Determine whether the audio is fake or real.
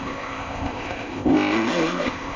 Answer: fake